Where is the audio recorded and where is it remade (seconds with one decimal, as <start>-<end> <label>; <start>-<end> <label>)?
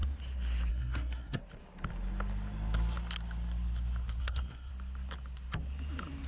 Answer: 0.0-0.7 recorded; 0.7-1.4 remade; 1.4-4.2 recorded; 4.2-4.7 remade; 4.7-6.3 recorded